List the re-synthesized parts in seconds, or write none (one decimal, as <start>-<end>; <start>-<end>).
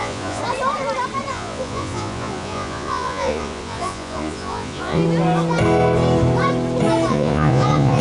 0.0-0.4; 1.3-5.0; 7.1-8.0